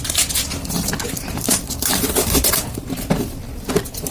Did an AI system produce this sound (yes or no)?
yes